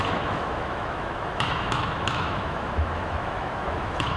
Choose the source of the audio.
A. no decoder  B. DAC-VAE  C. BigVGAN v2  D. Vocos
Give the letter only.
B